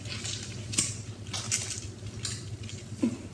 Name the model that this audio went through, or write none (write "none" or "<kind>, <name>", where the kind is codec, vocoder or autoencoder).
none